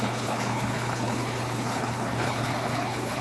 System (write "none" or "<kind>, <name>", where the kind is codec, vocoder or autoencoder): codec, HILCodec